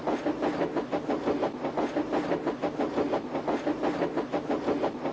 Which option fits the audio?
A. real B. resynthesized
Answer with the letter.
A